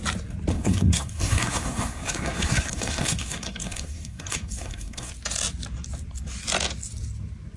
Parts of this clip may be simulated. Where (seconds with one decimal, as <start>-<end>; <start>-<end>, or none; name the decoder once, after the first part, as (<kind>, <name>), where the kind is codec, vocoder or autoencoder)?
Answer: 0.5-5.1 (codec, SNAC)